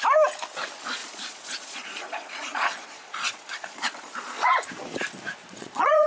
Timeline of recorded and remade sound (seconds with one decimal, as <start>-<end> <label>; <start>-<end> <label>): 0.0-1.0 recorded; 1.0-4.7 remade; 4.7-5.4 recorded; 5.4-6.1 remade